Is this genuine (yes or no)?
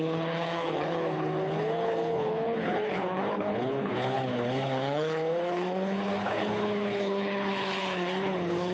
no